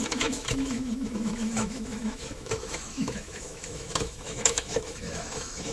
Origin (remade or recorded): remade